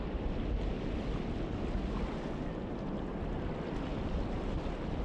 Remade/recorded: recorded